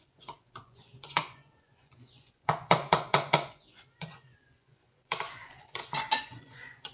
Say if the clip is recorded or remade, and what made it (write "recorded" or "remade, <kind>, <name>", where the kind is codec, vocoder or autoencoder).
remade, vocoder, Vocos